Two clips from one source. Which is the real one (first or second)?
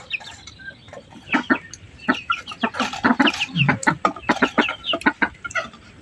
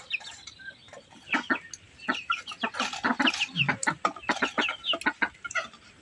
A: second